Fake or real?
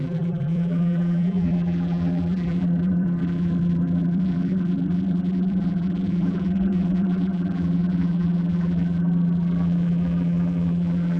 fake